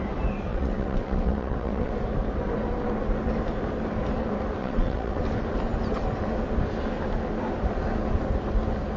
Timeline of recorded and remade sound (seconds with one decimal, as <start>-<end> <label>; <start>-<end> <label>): 0.0-0.5 recorded; 0.5-1.9 remade; 1.9-4.6 recorded; 4.6-5.2 remade; 5.2-9.0 recorded

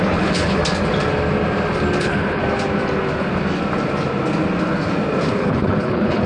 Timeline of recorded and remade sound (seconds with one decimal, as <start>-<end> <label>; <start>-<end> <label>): 0.0-0.6 remade; 0.6-2.0 recorded; 2.0-2.4 remade; 2.4-5.3 recorded; 5.3-6.3 remade

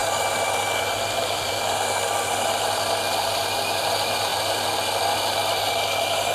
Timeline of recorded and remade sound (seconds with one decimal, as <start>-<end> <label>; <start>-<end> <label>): 0.0-6.3 recorded

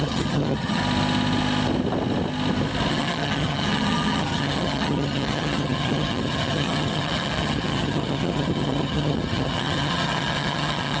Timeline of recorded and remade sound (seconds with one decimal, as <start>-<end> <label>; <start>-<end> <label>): 0.0-0.8 remade; 0.8-2.9 recorded; 2.9-11.0 remade

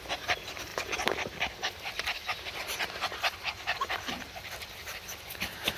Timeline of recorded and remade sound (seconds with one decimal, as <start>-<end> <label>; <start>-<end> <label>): 0.0-5.8 recorded